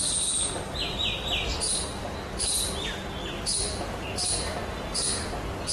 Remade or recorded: recorded